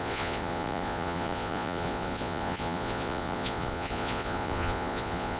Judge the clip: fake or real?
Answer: fake